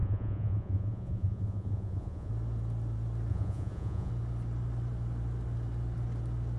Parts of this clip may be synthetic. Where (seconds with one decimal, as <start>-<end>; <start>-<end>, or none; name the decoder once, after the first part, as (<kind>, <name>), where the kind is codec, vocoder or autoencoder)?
0.0-2.3 (vocoder, Vocos); 3.3-4.1